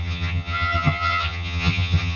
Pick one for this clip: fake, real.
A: fake